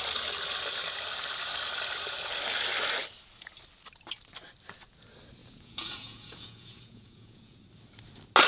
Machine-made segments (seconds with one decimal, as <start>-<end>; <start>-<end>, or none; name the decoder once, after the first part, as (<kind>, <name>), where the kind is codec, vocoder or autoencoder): 5.4-7.6 (vocoder, Vocos)

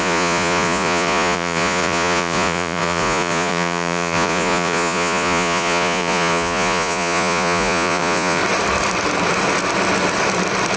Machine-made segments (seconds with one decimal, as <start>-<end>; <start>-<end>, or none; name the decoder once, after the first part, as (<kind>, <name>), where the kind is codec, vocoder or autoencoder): 0.0-8.4 (vocoder, Vocos)

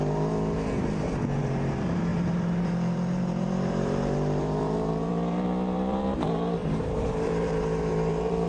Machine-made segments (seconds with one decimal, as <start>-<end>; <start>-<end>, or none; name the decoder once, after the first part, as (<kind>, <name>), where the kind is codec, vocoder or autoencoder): 0.0-8.5 (vocoder, BigVGAN v2)

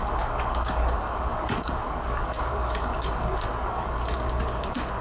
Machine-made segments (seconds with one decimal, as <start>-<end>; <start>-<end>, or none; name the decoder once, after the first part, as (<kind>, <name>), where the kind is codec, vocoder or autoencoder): 0.0-5.0 (codec, DAC)